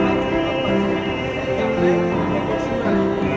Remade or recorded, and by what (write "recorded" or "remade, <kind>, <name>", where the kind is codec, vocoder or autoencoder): remade, vocoder, BigVGAN v2